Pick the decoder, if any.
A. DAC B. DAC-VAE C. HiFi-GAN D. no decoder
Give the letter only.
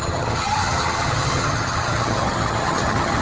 C